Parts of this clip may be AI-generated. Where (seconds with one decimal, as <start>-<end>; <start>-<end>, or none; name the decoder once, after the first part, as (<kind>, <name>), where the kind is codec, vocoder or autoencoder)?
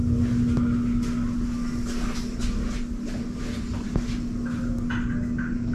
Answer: none